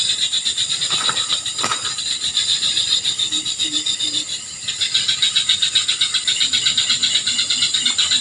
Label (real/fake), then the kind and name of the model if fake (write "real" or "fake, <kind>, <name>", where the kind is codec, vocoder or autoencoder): real